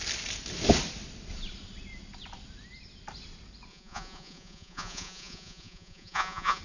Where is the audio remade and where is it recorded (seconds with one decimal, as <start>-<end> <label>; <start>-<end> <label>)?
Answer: 0.0-3.7 recorded; 3.7-6.6 remade